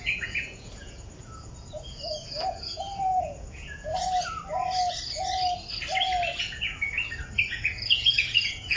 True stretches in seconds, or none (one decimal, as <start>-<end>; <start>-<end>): 3.9-6.4; 6.9-7.5